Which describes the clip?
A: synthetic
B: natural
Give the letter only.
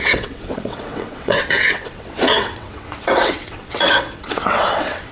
A